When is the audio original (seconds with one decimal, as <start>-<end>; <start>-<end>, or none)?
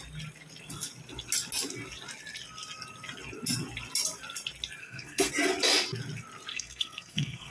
0.0-4.8; 5.3-6.5